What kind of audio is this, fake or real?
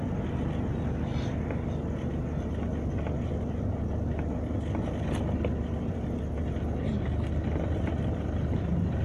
real